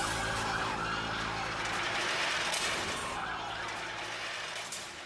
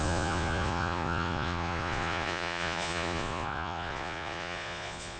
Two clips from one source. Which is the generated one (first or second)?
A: second